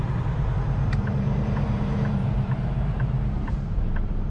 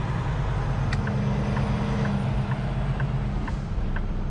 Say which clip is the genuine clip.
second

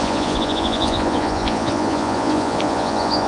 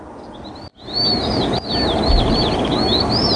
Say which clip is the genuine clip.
second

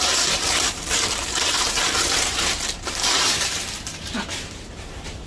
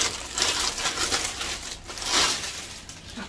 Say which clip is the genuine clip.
second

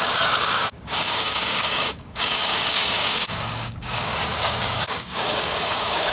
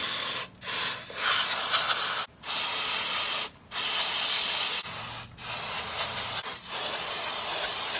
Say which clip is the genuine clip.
second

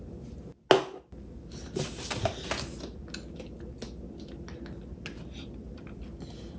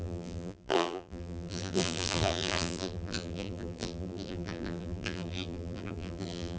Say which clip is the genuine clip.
first